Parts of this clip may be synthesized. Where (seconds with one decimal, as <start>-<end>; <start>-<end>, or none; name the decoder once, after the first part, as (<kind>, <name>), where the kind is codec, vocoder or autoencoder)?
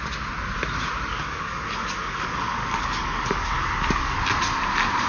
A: 1.1-4.2 (codec, DAC)